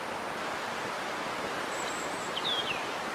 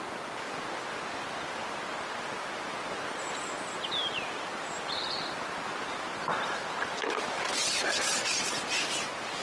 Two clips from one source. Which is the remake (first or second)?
first